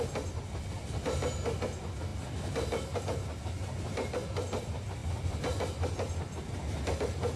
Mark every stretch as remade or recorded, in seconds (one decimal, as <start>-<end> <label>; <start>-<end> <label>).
0.0-7.4 recorded